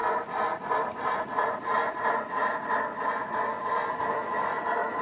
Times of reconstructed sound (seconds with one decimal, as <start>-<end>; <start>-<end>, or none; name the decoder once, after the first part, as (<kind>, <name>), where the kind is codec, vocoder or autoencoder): none